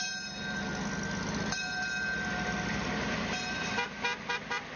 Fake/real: real